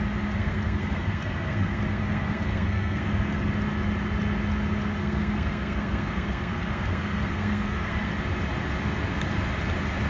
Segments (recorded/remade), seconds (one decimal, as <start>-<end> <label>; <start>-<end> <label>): 0.0-0.4 recorded; 0.4-3.5 remade; 3.5-5.0 recorded; 5.0-8.1 remade; 8.1-10.1 recorded